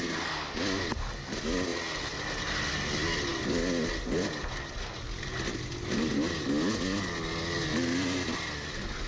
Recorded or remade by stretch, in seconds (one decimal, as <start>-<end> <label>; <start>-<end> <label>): 0.0-9.1 recorded